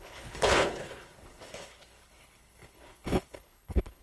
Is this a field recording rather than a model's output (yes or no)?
no